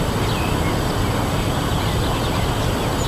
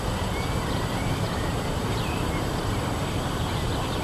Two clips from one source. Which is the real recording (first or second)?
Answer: first